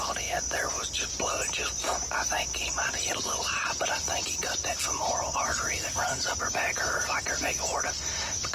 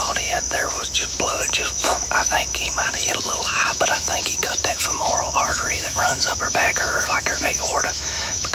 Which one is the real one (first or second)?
first